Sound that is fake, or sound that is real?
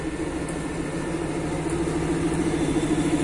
real